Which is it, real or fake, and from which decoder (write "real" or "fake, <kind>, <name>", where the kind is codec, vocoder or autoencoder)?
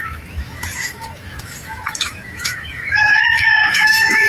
fake, autoencoder, DAC-VAE